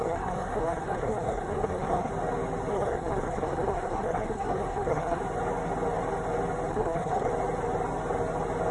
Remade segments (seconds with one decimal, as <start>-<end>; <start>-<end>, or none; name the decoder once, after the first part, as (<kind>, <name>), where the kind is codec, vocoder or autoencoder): 0.0-2.1 (codec, SNAC); 2.7-5.2; 6.7-7.3